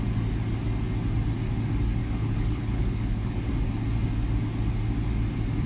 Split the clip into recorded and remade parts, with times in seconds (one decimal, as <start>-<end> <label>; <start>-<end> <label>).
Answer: 0.0-2.0 recorded; 2.0-3.5 remade; 3.5-5.7 recorded